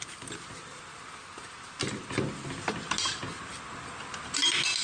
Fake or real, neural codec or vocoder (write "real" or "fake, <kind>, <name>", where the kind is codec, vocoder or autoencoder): real